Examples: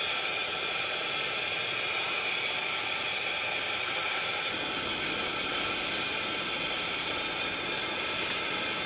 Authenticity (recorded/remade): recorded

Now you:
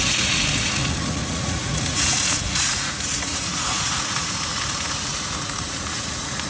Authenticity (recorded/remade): remade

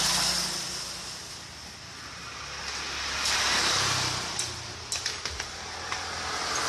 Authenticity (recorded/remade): recorded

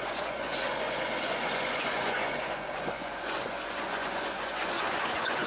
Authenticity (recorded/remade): remade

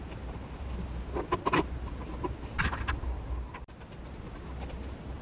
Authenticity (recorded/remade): recorded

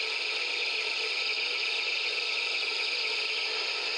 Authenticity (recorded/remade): recorded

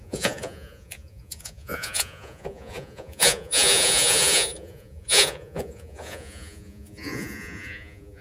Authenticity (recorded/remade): remade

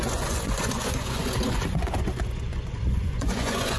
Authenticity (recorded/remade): remade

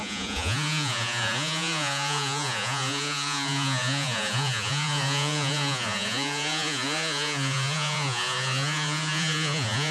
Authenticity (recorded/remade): remade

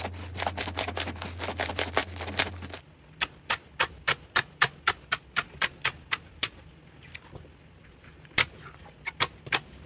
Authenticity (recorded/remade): recorded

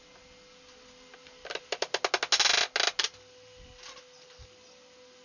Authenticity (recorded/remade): recorded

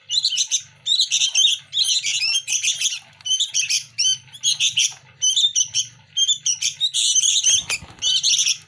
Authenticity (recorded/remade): recorded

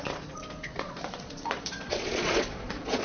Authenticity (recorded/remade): remade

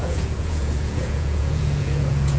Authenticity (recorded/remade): remade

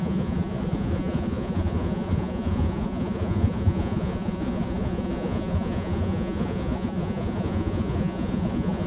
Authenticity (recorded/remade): remade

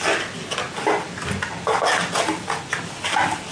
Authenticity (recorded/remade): recorded